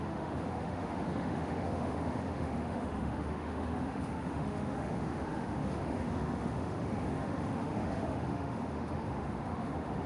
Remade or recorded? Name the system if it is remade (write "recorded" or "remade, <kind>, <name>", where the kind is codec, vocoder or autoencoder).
remade, autoencoder, DAC-VAE